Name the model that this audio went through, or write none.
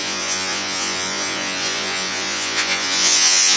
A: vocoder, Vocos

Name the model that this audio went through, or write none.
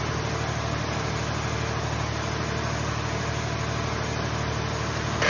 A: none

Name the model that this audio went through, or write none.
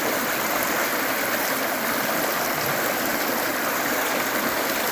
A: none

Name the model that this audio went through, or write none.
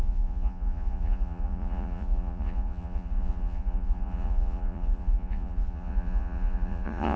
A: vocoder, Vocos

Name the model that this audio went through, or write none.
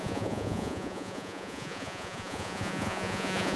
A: vocoder, Vocos